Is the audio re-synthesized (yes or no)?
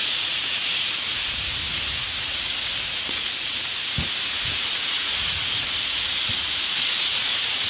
yes